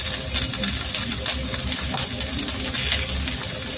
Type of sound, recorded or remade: recorded